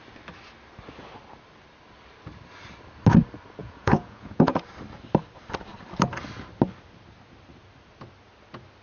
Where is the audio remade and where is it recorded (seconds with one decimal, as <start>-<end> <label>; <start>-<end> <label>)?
0.0-3.6 recorded; 3.6-4.6 remade; 4.6-8.8 recorded